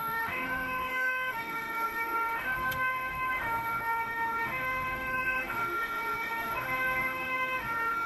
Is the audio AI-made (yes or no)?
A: yes